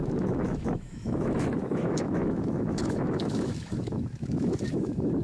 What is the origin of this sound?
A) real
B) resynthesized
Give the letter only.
B